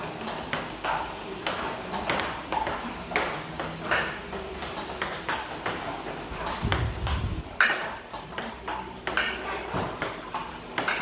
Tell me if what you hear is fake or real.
real